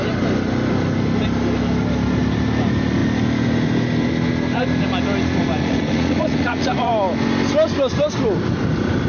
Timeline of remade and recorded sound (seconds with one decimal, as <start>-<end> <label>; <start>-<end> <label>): 0.0-5.6 recorded; 5.6-6.9 remade; 6.9-9.1 recorded